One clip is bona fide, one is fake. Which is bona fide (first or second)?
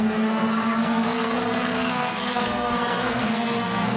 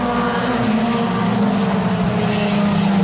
second